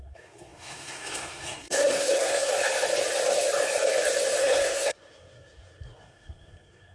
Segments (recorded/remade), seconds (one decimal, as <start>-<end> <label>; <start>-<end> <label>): 0.0-2.5 remade; 2.5-4.4 recorded; 4.4-6.9 remade